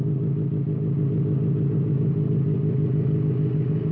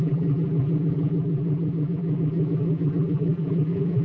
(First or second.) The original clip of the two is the first